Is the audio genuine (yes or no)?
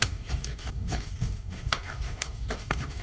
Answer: no